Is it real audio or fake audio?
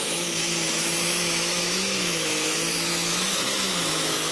fake